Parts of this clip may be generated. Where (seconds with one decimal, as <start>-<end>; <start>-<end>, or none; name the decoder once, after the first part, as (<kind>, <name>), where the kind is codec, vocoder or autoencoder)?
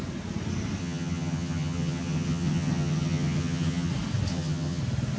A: 0.8-3.9 (vocoder, HiFi-GAN); 4.3-4.8